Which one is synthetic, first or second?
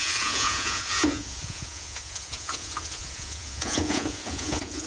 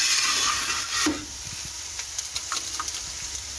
first